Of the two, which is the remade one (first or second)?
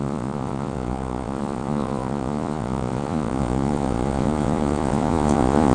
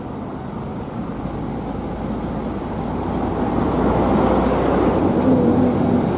first